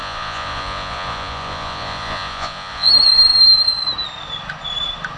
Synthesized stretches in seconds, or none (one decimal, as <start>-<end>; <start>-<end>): 0.0-2.9